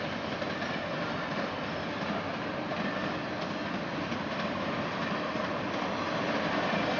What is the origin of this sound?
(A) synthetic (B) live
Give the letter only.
B